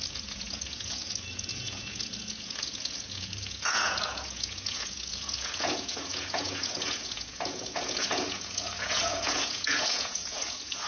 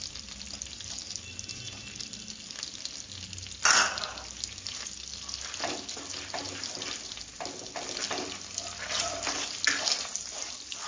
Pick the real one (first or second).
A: second